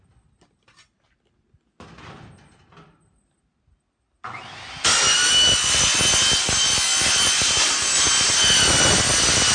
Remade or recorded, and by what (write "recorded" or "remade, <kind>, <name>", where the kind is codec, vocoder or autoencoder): recorded